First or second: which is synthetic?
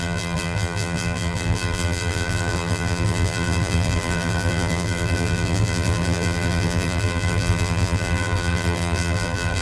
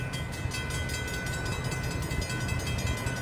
first